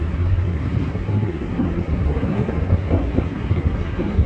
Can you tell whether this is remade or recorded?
remade